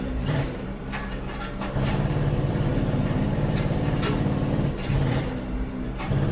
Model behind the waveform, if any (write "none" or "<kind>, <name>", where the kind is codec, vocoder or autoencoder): vocoder, BigVGAN v2